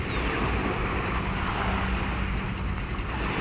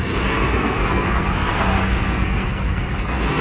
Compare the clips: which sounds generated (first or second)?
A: second